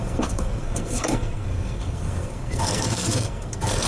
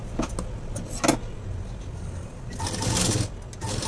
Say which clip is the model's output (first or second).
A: first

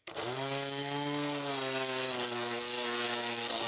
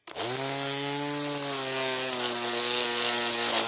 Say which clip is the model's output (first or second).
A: first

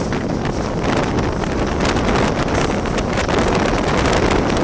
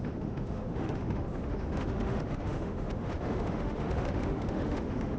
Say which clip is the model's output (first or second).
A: second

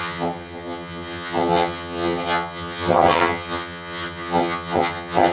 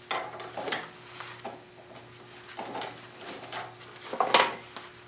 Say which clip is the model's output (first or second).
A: first